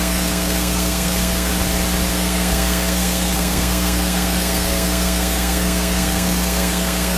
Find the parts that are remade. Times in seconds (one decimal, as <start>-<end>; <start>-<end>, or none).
0.0-1.5; 2.1-7.2